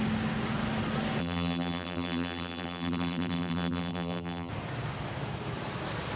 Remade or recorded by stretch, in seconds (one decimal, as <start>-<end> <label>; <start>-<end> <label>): 0.0-1.2 recorded; 1.2-4.5 remade; 4.5-6.2 recorded